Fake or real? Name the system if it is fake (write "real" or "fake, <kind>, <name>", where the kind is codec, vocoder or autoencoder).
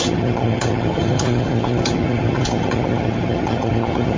fake, vocoder, HiFi-GAN